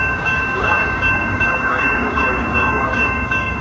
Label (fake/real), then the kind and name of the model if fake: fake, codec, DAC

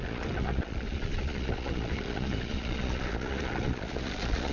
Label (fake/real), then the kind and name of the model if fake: fake, vocoder, Vocos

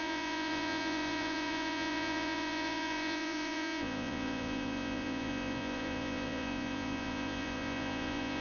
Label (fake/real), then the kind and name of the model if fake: fake, vocoder, Vocos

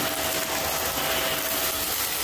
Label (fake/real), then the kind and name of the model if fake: real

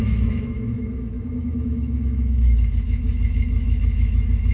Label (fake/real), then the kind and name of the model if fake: fake, autoencoder, DAC-VAE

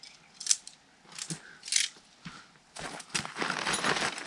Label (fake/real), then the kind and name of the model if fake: real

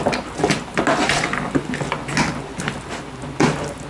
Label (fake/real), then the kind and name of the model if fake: real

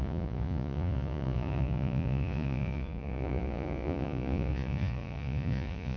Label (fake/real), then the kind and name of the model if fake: fake, vocoder, Vocos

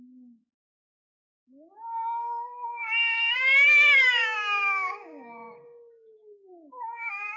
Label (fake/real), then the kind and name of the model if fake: fake, codec, DAC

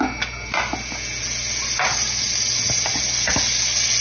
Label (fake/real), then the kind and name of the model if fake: real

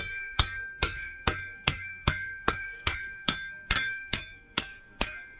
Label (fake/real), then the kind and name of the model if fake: fake, codec, SNAC